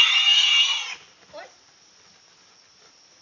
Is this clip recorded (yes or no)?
yes